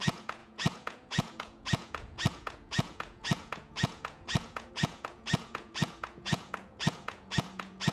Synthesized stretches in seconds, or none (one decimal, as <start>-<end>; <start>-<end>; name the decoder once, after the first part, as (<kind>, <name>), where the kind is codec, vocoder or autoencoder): 0.0-7.9 (vocoder, Vocos)